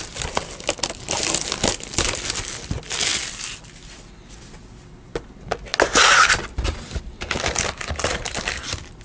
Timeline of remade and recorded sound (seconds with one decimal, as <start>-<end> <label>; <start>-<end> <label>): 0.0-9.0 recorded